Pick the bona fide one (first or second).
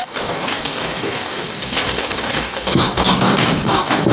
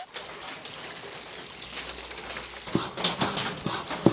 second